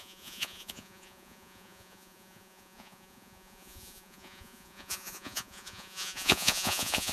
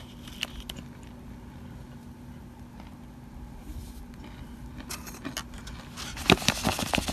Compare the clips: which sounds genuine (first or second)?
second